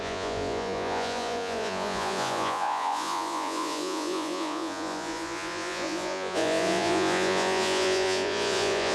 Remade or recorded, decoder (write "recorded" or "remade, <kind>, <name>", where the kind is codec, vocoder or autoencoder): remade, vocoder, Vocos